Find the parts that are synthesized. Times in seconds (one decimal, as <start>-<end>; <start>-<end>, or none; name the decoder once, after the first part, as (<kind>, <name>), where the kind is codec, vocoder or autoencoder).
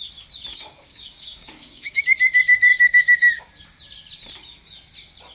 0.5-2.0 (codec, DAC); 2.7-3.4